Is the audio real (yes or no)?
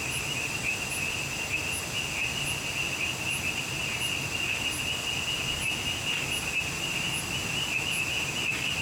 yes